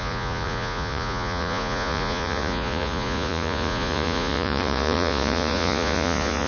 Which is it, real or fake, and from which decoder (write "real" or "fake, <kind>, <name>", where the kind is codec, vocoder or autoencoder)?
fake, vocoder, Vocos